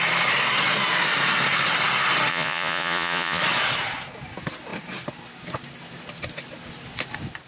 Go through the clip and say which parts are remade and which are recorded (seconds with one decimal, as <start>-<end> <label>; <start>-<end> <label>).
0.0-2.3 recorded; 2.3-3.4 remade; 3.4-7.5 recorded